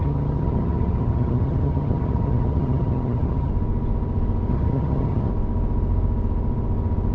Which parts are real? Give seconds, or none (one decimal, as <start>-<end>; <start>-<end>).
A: 3.5-4.5; 5.3-7.1